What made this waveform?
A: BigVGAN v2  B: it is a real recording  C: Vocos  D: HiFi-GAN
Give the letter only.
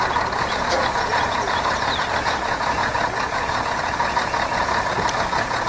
C